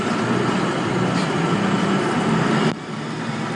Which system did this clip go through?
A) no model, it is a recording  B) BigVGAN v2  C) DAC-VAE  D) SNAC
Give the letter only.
A